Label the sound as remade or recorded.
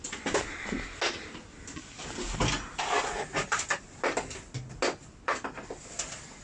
recorded